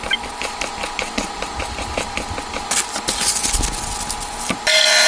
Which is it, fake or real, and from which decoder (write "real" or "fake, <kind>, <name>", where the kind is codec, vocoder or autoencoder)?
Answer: real